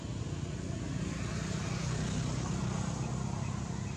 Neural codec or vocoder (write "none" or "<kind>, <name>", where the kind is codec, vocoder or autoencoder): none